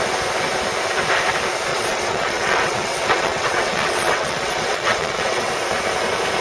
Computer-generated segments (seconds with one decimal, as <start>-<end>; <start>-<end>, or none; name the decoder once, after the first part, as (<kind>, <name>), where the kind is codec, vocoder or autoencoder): 1.7-5.5 (vocoder, WaveNeXt)